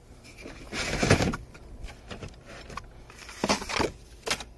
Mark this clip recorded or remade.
recorded